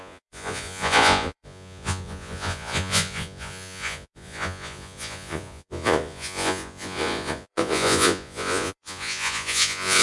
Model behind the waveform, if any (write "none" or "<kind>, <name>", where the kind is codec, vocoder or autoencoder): vocoder, Vocos